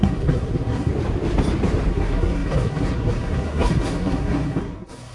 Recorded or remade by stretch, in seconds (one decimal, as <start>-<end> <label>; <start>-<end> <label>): 0.0-0.9 remade; 0.9-1.9 recorded; 1.9-5.1 remade